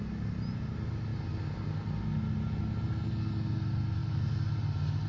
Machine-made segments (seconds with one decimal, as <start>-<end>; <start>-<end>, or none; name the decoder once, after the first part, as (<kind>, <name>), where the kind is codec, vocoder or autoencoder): none